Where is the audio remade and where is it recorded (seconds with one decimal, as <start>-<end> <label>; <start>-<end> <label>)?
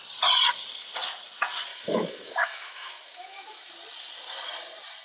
0.0-1.7 recorded; 1.7-3.7 remade; 3.7-5.0 recorded